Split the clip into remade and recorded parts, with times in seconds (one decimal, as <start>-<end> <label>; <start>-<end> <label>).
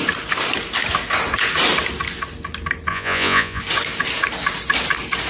0.0-2.9 recorded; 2.9-3.6 remade; 3.6-5.3 recorded